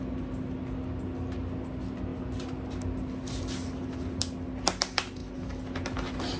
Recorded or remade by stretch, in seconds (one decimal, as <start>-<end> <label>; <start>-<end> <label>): 0.0-6.4 recorded